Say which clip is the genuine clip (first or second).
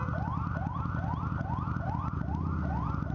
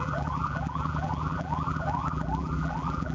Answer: first